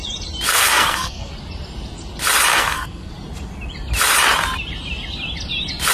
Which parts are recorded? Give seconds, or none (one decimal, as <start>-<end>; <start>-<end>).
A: 0.0-0.5; 1.3-2.5; 3.1-5.9

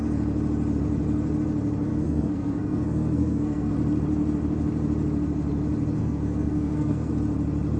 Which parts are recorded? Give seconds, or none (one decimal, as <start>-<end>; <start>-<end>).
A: 0.0-1.9; 3.7-6.0; 7.1-7.8